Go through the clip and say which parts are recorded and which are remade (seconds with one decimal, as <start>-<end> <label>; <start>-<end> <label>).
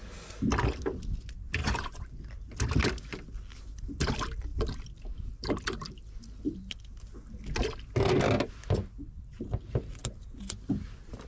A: 0.0-1.6 recorded; 1.6-2.2 remade; 2.2-11.3 recorded